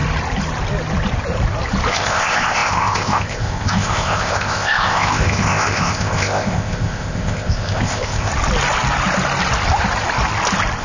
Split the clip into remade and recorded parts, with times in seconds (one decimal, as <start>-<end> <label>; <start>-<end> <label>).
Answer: 0.0-1.9 recorded; 1.9-8.3 remade; 8.3-10.8 recorded